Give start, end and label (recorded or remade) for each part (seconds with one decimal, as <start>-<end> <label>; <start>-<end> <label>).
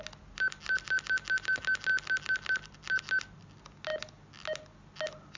0.0-5.4 recorded